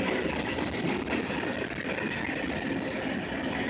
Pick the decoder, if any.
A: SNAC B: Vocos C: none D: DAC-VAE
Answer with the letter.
C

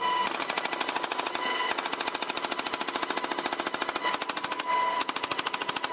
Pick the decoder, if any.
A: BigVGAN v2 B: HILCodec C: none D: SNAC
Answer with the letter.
C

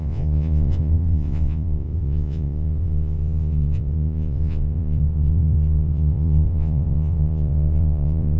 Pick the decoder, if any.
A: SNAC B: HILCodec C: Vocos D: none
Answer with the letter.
C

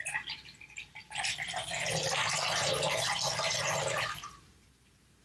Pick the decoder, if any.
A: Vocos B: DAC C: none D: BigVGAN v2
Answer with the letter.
D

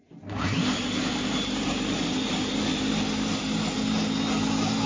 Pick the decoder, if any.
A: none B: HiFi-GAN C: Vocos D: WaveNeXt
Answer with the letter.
A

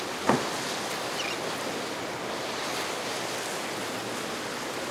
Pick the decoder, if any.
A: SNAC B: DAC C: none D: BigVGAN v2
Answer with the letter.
C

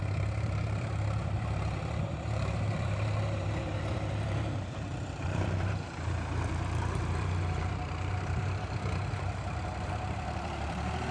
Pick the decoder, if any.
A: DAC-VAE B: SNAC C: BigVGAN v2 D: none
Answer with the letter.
C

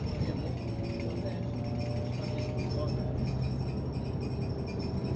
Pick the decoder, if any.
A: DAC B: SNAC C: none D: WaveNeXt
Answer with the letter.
C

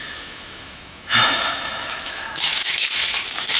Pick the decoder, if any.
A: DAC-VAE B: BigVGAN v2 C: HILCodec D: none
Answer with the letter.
A